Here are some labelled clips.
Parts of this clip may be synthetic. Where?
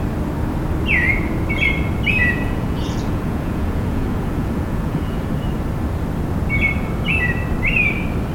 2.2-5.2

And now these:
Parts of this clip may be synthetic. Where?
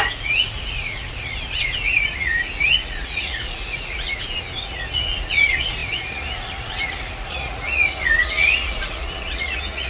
0.0-9.9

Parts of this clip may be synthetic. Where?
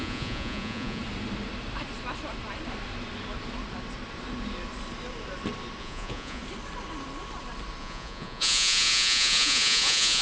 0.0-1.0; 5.8-6.4; 7.8-10.2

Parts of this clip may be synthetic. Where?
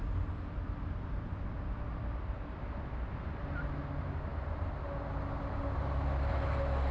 none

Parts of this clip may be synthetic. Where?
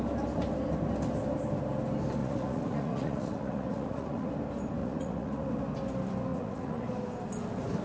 2.2-4.3; 4.8-5.5; 6.3-6.9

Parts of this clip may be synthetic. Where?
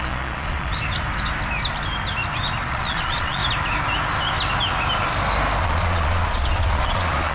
0.0-0.7; 2.7-3.4; 5.6-7.3